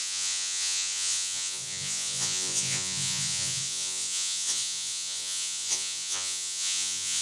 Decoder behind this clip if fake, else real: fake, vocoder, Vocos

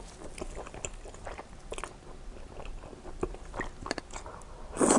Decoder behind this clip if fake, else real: real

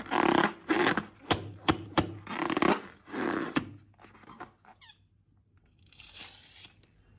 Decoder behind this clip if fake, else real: real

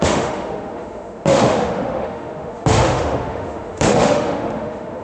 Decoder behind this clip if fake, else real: fake, autoencoder, DAC-VAE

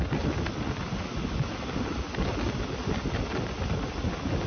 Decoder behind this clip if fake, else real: real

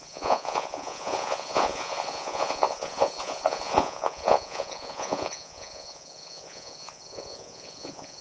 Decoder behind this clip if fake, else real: fake, vocoder, Vocos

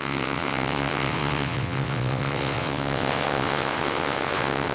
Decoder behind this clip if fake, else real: fake, vocoder, WaveNeXt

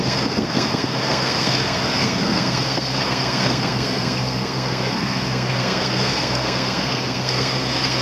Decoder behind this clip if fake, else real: fake, codec, SNAC